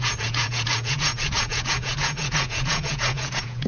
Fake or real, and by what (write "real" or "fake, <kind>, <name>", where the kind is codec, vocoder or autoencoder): fake, vocoder, Vocos